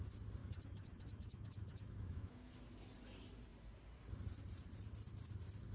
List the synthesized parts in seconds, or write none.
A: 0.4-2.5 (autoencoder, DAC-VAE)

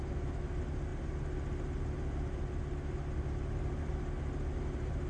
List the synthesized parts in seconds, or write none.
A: none

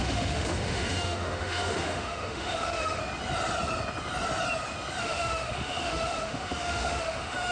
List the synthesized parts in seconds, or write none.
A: 0.0-3.0 (autoencoder, DAC-VAE); 5.0-7.5

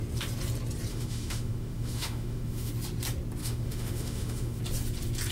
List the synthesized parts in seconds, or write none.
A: 0.9-2.7 (autoencoder, DAC-VAE); 3.4-4.6

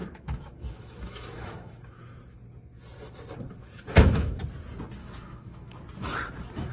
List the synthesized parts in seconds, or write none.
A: 0.0-2.2 (autoencoder, DAC-VAE); 3.6-4.4; 5.0-5.8

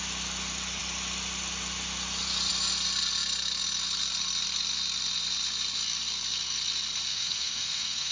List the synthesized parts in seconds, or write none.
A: 7.1-8.1 (autoencoder, DAC-VAE)

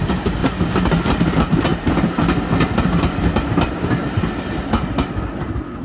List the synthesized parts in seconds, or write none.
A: none

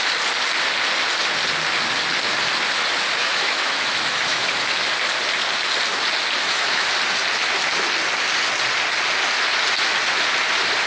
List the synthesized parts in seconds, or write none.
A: 3.2-4.5 (autoencoder, DAC-VAE); 6.4-7.0